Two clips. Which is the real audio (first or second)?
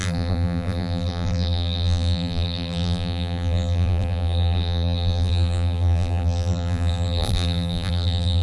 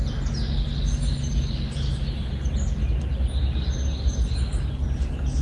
second